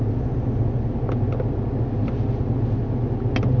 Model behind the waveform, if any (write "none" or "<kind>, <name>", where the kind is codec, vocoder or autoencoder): none